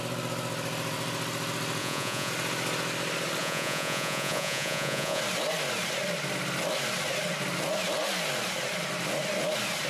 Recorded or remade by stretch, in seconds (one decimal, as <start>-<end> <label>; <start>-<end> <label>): 0.0-1.8 recorded; 1.8-2.3 remade; 2.3-3.4 recorded; 3.4-5.2 remade; 5.2-9.9 recorded